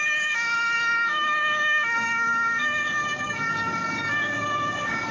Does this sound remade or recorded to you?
remade